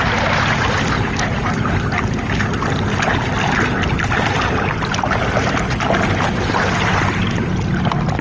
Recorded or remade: recorded